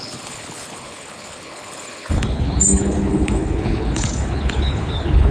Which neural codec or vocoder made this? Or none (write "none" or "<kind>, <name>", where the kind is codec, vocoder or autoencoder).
codec, HILCodec